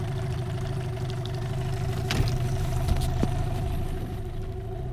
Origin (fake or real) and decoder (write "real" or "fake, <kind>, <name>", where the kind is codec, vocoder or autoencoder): real